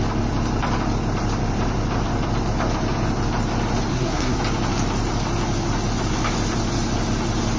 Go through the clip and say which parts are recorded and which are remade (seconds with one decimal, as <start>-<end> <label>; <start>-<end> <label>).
0.0-3.9 recorded; 3.9-4.4 remade; 4.4-7.6 recorded